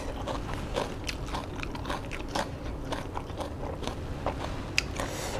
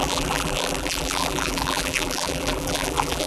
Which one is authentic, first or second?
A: first